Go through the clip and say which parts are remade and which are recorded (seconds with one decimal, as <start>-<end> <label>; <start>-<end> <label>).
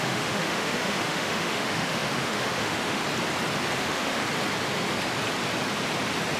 0.0-3.0 remade; 3.0-3.8 recorded; 3.8-4.2 remade; 4.2-6.4 recorded